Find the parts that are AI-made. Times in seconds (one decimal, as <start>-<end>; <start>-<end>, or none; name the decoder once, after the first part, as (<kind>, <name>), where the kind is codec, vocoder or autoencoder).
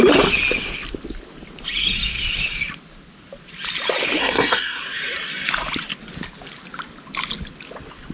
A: 4.2-4.8 (codec, SNAC)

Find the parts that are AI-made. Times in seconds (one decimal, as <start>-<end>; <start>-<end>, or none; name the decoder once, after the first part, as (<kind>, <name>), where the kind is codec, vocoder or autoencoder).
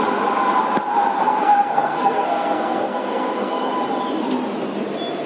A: 1.2-3.7 (codec, SNAC)